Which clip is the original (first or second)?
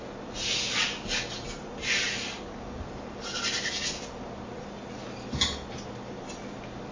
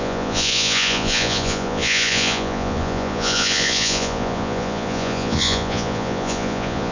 first